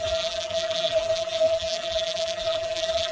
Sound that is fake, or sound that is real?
fake